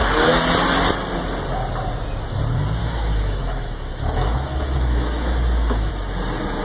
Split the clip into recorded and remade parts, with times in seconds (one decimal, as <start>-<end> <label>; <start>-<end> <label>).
0.0-2.8 recorded; 2.8-5.9 remade; 5.9-6.6 recorded